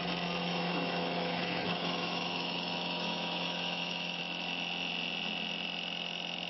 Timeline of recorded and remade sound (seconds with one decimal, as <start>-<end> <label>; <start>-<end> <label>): 0.0-0.4 recorded; 0.4-4.2 remade; 4.2-6.5 recorded